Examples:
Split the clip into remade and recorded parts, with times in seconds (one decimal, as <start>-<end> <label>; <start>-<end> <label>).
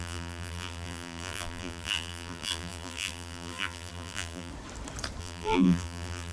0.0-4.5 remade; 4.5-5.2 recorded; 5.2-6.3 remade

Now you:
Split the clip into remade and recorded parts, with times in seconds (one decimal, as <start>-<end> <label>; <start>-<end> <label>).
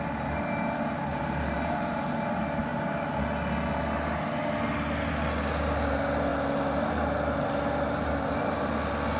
0.0-1.1 recorded; 1.1-2.0 remade; 2.0-9.2 recorded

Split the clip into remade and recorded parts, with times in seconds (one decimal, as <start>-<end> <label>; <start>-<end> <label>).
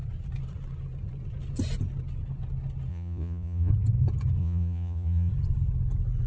0.0-2.9 recorded; 2.9-3.7 remade; 3.7-4.4 recorded; 4.4-5.3 remade; 5.3-6.3 recorded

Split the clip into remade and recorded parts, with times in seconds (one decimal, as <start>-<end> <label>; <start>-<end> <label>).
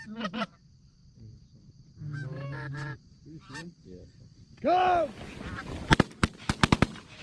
0.0-1.1 recorded; 1.1-3.7 remade; 3.7-7.2 recorded